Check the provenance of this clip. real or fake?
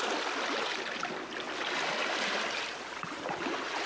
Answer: real